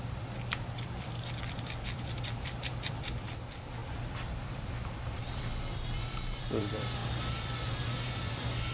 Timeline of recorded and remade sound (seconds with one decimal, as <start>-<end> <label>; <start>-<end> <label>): 0.0-8.7 remade